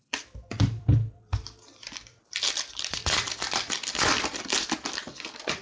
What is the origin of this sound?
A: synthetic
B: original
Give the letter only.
A